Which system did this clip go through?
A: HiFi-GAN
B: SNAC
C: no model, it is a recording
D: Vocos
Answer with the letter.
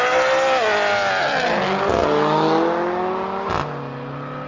C